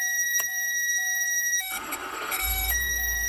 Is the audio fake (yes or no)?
yes